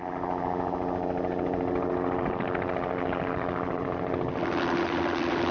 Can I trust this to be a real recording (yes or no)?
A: no